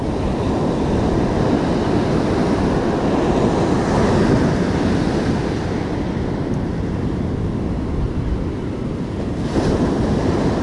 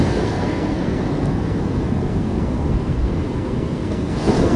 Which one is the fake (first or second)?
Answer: second